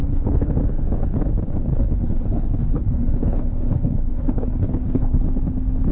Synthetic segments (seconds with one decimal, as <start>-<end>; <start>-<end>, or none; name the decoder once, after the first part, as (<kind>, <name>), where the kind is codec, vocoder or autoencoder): 0.0-0.5 (codec, HILCodec); 1.7-5.2